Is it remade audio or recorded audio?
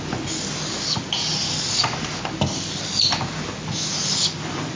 recorded